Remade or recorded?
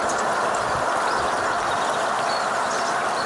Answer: recorded